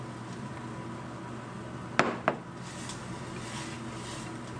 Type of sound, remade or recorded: recorded